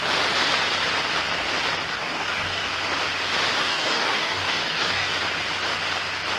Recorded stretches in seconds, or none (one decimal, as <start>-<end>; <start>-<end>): 0.0-1.9; 2.7-3.6; 5.1-6.4